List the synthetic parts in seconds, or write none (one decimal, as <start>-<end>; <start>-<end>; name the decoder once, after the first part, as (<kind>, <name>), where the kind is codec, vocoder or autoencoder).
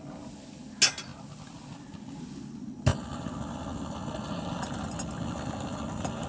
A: none